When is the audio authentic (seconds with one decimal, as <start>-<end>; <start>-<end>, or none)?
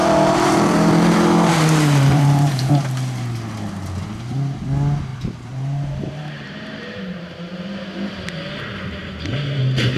2.7-5.1; 7.8-10.0